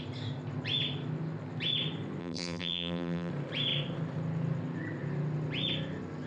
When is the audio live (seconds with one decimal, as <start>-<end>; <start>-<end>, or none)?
0.0-2.2; 3.3-6.3